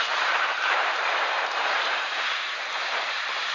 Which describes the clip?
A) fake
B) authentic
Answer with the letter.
A